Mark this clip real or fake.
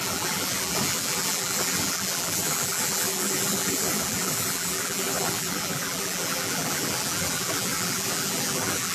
fake